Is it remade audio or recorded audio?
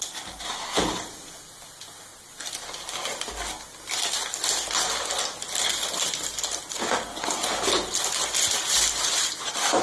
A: recorded